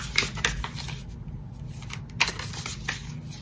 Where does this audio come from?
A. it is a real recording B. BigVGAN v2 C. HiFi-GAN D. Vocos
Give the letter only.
A